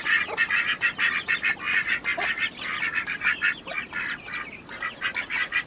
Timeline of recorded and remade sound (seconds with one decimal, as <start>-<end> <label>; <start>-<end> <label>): 0.0-5.7 recorded